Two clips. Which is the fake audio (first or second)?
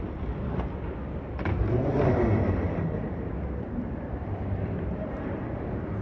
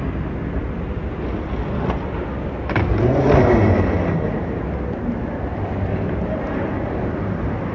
first